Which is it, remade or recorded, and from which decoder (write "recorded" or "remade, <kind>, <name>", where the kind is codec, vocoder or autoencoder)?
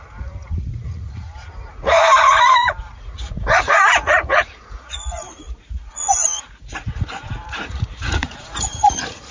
remade, vocoder, Vocos